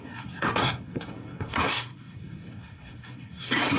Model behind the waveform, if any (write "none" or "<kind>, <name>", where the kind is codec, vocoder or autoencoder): codec, SNAC